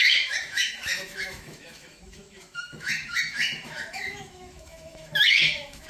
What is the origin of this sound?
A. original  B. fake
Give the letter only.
B